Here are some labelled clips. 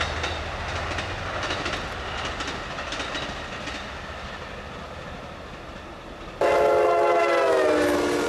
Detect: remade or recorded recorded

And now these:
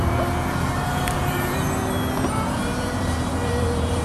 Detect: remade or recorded remade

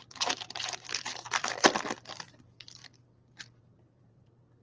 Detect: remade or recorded remade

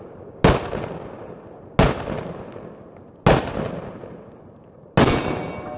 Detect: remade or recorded recorded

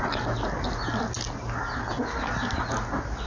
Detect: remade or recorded recorded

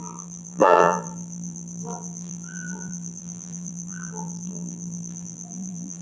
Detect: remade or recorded remade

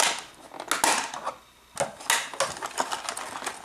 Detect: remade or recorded recorded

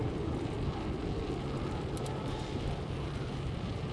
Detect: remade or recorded remade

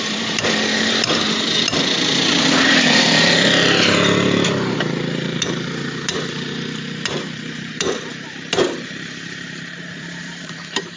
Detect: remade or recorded remade